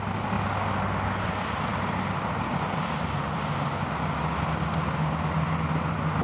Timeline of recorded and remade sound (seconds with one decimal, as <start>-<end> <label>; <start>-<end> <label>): 0.0-6.2 recorded